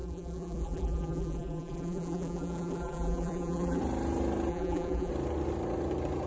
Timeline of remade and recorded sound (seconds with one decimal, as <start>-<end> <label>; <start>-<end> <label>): 0.0-3.8 remade; 3.8-4.5 recorded; 4.5-5.1 remade; 5.1-6.3 recorded